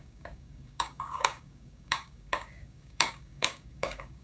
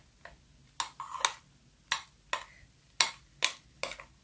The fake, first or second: first